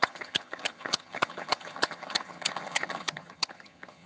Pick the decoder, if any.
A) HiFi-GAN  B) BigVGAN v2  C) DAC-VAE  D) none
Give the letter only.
A